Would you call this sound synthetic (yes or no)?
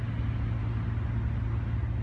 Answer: no